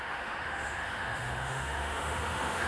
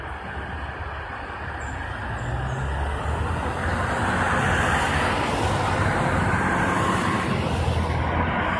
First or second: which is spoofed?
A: first